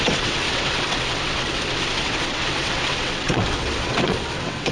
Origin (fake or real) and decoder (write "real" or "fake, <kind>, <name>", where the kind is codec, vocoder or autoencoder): fake, vocoder, WaveNeXt